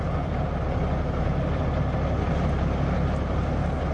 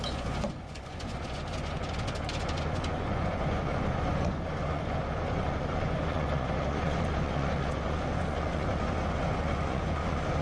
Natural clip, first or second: first